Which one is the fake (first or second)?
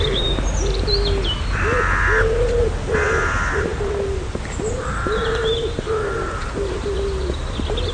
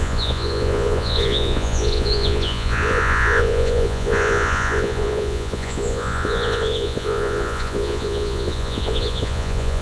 second